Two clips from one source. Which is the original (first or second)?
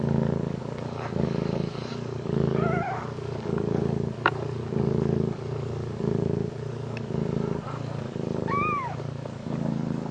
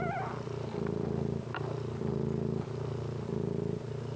second